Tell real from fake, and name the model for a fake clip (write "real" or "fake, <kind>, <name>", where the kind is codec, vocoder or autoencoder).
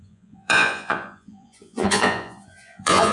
fake, vocoder, Vocos